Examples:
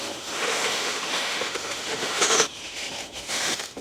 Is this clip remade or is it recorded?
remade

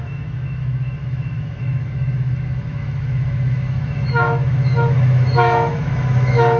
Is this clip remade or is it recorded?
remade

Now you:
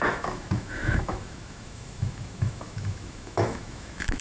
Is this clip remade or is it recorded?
remade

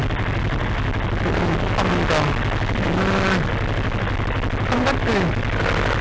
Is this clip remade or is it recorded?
recorded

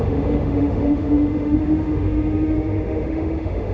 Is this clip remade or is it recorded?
remade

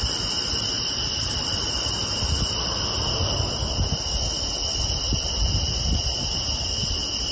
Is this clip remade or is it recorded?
recorded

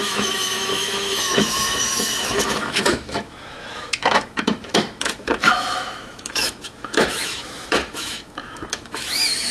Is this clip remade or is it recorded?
remade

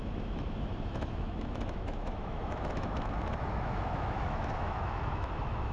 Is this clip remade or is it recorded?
remade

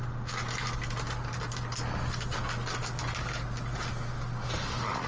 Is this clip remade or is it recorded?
recorded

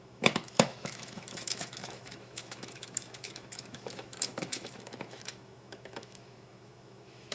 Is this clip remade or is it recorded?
remade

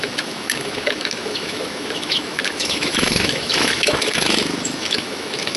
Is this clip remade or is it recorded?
remade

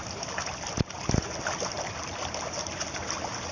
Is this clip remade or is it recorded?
recorded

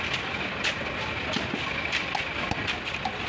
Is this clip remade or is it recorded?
recorded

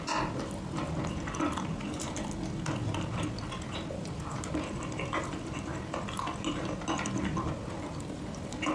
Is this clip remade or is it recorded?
recorded